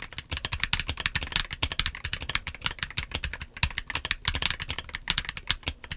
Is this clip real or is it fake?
real